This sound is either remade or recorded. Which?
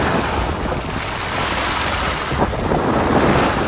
recorded